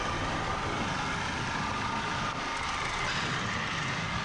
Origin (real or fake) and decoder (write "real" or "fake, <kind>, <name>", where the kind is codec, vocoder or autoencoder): real